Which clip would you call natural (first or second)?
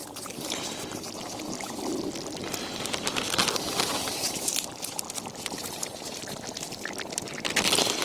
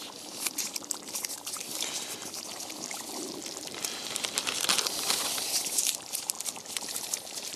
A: first